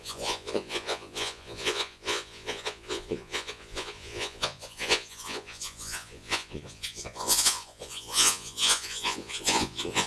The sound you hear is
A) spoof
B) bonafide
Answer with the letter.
A